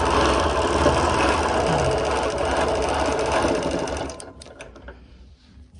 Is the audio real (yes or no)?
yes